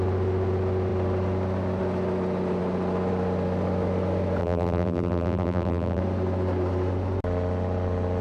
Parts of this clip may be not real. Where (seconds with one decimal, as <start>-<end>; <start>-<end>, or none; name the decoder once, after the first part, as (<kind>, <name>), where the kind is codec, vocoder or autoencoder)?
4.4-6.0 (vocoder, BigVGAN v2)